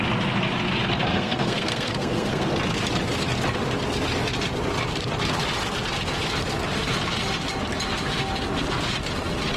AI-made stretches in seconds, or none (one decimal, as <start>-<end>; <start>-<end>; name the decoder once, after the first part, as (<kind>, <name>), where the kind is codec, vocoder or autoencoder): 1.1-2.5 (codec, SNAC)